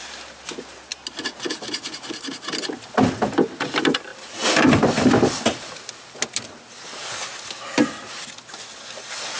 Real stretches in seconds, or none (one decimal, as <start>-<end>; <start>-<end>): 0.0-9.4